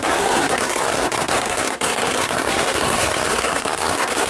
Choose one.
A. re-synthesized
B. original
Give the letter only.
A